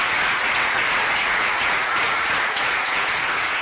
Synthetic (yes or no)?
yes